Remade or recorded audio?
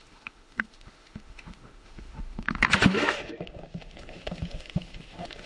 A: remade